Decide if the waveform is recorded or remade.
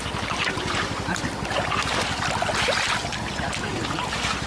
recorded